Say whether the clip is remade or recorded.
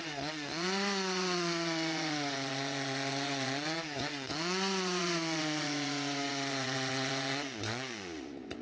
remade